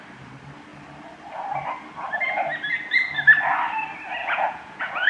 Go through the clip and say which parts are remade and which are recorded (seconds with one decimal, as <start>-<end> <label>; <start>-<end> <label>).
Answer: 0.0-4.2 recorded; 4.2-5.1 remade

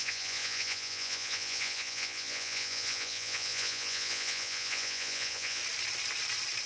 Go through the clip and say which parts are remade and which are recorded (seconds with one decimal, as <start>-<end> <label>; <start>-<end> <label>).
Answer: 0.0-5.6 remade; 5.6-6.7 recorded

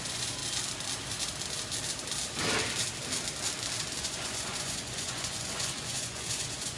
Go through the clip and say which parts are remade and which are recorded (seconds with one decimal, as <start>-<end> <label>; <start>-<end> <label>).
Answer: 0.0-0.4 remade; 0.4-4.0 recorded; 4.0-6.8 remade

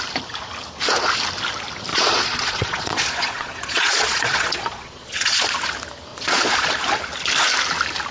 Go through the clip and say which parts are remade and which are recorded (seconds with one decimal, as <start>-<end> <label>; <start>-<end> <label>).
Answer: 0.0-1.9 recorded; 1.9-5.5 remade; 5.5-6.1 recorded; 6.1-6.7 remade; 6.7-8.1 recorded

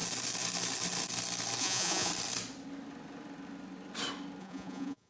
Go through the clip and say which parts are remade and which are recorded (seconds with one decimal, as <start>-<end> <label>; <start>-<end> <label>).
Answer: 0.0-1.6 recorded; 1.6-2.1 remade; 2.1-4.4 recorded; 4.4-5.1 remade